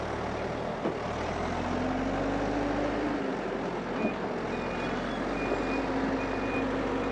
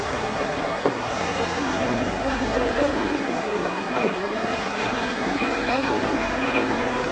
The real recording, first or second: first